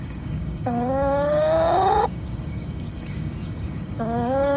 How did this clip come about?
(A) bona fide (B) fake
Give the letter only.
B